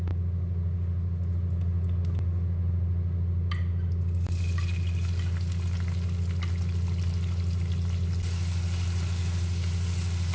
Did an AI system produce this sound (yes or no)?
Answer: no